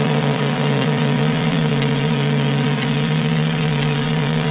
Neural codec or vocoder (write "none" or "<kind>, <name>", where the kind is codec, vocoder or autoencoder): vocoder, Vocos